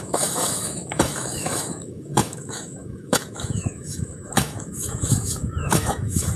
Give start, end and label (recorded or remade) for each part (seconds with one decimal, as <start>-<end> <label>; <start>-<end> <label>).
0.0-6.4 remade